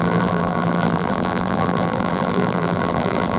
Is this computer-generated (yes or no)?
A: yes